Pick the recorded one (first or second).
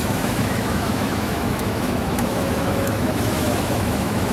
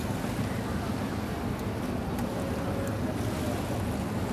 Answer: second